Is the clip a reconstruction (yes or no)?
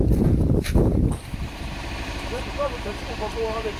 yes